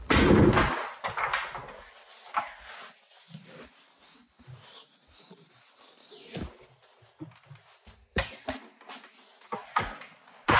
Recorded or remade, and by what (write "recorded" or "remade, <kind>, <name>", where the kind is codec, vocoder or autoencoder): recorded